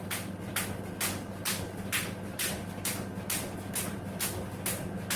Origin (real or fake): real